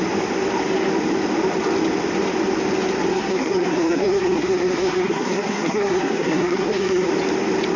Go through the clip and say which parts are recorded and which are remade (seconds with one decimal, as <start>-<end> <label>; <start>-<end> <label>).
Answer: 0.0-3.1 recorded; 3.1-7.1 remade; 7.1-7.8 recorded